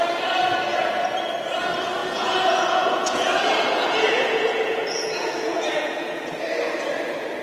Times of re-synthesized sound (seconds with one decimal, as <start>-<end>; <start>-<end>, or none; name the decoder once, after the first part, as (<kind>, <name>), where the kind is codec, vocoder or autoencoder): 0.7-1.4 (vocoder, Vocos); 2.0-6.4